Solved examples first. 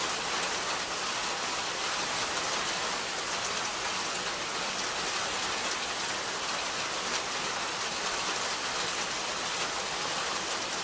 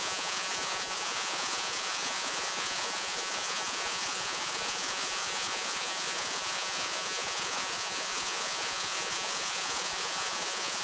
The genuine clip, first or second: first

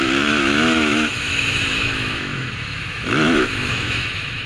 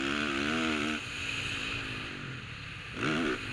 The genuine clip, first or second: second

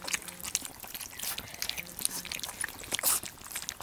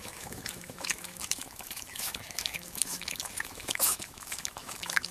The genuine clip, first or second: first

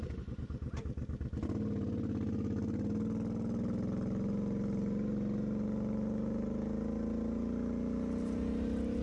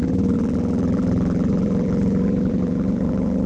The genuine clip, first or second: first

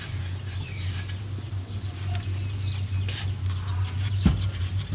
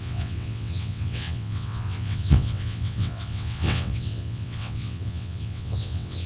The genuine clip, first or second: first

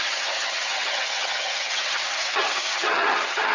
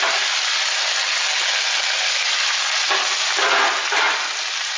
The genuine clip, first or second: second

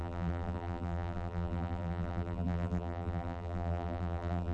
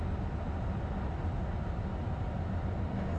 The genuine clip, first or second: second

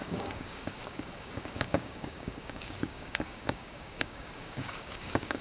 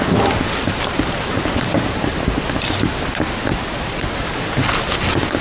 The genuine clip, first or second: second